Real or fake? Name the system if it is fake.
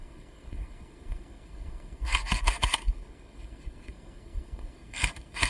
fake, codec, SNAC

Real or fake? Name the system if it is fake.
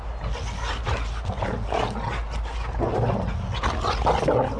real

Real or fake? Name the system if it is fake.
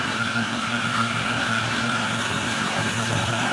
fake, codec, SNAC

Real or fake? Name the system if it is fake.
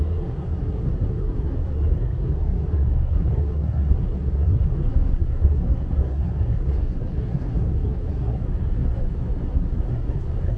fake, codec, SNAC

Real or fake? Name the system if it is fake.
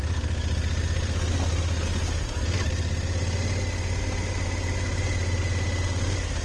real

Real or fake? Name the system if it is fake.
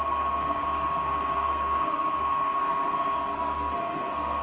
fake, codec, SNAC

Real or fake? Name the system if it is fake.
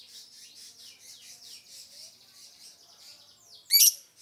real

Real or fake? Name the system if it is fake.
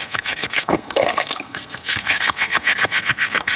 fake, codec, SNAC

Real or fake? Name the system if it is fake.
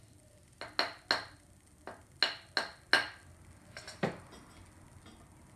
real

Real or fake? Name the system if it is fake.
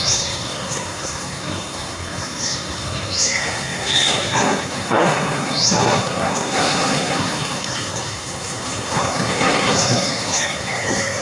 fake, codec, SNAC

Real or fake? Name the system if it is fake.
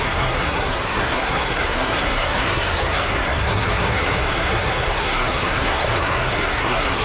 fake, codec, SNAC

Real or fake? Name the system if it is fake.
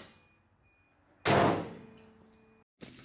real